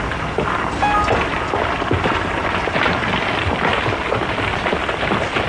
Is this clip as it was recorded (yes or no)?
yes